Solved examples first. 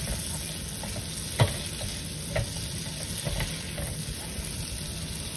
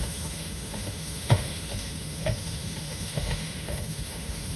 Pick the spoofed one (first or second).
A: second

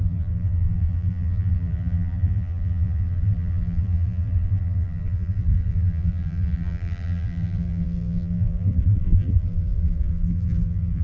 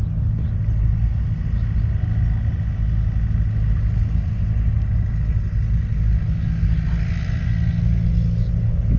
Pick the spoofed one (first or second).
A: first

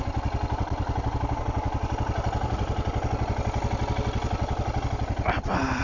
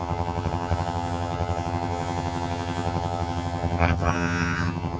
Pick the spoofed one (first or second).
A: second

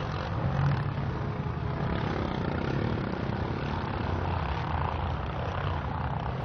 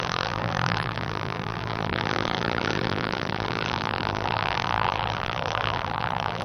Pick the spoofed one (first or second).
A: second